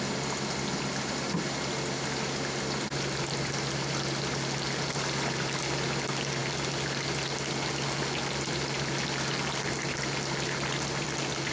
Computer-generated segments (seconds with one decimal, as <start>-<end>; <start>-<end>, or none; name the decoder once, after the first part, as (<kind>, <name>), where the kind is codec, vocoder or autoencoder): none